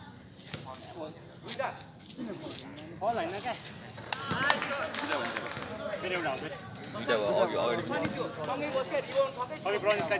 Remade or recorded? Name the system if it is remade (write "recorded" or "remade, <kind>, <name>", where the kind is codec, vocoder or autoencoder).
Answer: recorded